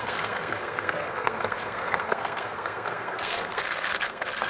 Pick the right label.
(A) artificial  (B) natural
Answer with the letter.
A